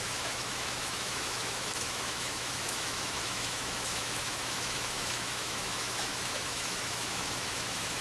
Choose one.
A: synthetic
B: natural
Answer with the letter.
A